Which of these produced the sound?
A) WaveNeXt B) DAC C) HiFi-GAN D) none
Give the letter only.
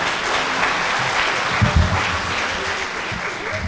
D